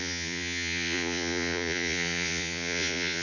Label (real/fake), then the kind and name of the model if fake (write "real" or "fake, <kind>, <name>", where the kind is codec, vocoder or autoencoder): fake, vocoder, Vocos